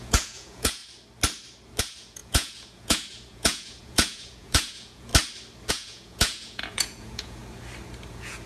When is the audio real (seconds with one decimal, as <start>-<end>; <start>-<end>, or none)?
0.8-1.8; 5.1-5.7; 7.4-8.1